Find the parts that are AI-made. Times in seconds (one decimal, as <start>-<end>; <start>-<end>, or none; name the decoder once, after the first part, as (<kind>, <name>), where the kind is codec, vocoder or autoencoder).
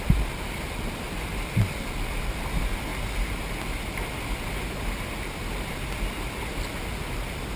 none